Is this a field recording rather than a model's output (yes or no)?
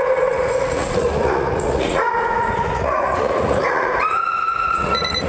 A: no